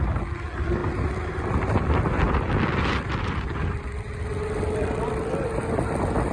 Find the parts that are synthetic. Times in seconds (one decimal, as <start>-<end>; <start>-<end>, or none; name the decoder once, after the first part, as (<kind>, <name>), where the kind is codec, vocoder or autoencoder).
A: none